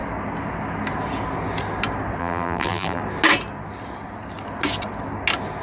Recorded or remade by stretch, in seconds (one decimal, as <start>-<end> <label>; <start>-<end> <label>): 0.0-2.2 recorded; 2.2-3.0 remade; 3.0-5.6 recorded